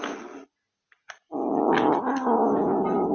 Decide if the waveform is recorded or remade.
recorded